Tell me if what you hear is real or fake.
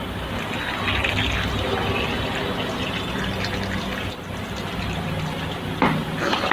fake